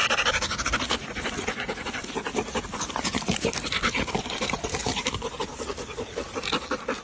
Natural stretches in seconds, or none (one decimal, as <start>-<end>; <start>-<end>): 0.0-4.2; 4.8-7.0